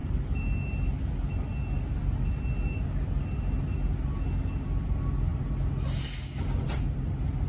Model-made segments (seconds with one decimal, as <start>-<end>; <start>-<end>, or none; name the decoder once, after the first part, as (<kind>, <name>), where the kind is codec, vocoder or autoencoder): none